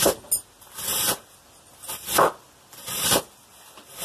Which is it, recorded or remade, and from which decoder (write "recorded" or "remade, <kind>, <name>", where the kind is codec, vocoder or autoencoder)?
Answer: recorded